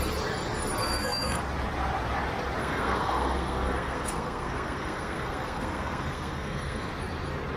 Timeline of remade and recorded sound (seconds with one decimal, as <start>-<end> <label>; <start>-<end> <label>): 0.0-0.8 recorded; 0.8-1.4 remade; 1.4-2.6 recorded; 2.6-6.9 remade; 6.9-7.6 recorded